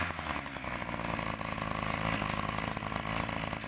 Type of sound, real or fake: real